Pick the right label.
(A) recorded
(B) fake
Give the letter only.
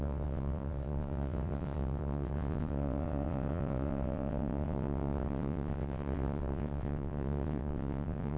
B